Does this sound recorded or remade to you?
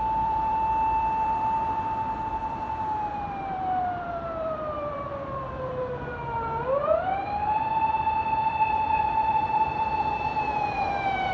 remade